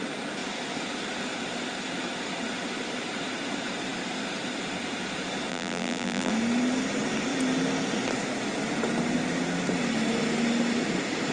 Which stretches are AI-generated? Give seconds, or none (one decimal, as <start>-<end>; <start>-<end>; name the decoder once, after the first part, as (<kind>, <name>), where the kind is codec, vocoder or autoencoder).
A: 5.5-6.3 (vocoder, BigVGAN v2)